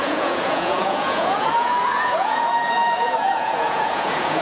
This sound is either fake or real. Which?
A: fake